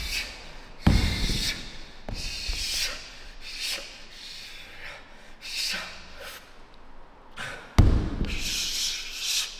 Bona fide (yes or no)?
yes